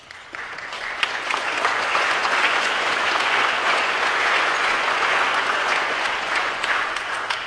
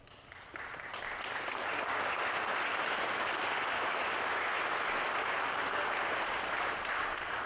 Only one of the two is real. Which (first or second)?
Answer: second